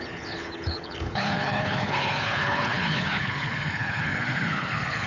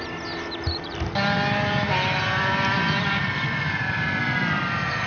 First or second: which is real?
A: second